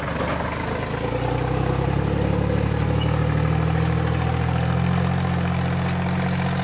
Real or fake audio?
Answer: real